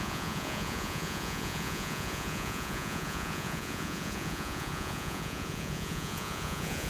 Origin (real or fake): fake